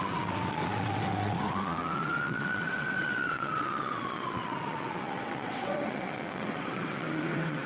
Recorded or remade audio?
remade